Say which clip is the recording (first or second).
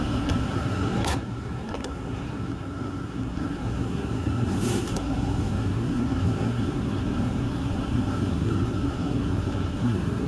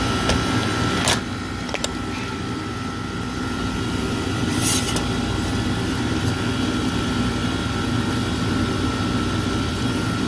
second